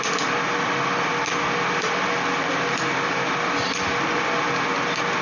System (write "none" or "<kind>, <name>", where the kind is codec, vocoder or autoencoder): none